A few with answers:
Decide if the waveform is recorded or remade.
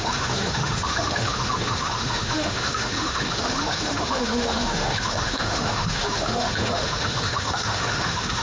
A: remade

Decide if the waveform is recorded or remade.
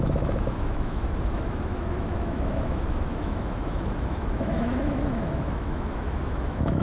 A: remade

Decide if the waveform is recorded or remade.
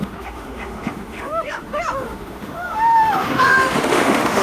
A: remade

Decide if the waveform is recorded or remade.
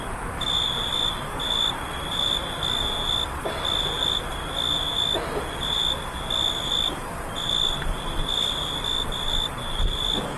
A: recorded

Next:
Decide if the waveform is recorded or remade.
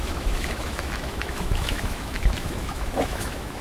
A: remade